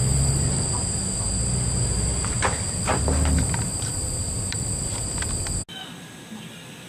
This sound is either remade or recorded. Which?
recorded